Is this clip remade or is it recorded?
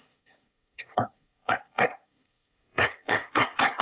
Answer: remade